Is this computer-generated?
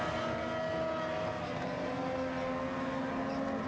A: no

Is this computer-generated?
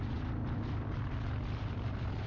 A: yes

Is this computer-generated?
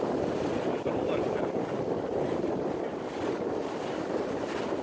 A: yes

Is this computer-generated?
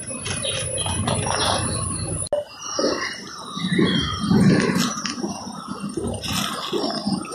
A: no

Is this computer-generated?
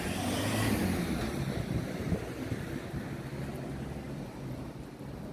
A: no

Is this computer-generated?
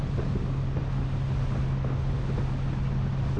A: no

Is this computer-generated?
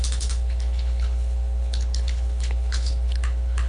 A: yes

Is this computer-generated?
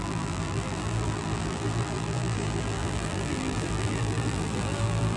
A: yes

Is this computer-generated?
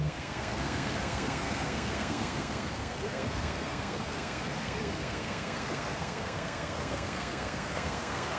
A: yes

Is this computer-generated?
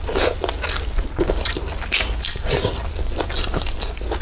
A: no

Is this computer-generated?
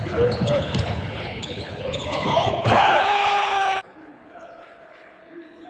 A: yes